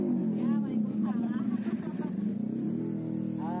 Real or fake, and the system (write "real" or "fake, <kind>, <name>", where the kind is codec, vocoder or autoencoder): real